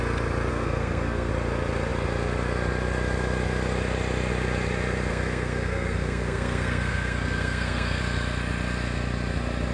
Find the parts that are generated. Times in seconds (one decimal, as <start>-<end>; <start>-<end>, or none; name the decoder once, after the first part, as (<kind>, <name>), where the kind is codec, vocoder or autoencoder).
0.5-1.3 (codec, SNAC); 5.1-8.0